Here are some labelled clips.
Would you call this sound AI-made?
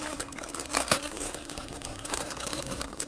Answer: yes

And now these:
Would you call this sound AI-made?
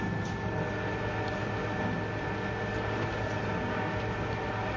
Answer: no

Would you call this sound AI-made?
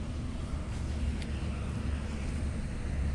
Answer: no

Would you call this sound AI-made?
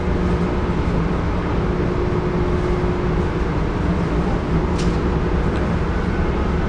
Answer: no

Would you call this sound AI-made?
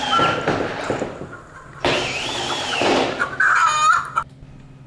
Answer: no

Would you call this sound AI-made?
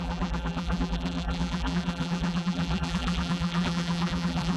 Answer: yes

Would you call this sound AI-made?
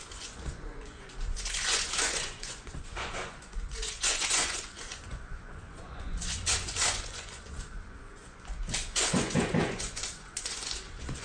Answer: yes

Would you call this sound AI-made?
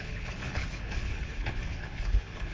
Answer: yes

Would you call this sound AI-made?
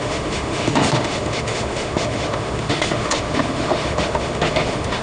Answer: yes